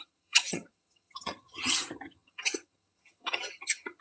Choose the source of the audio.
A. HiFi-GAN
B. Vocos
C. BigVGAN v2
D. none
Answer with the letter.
A